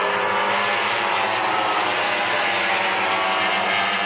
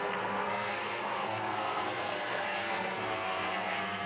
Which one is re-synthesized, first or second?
second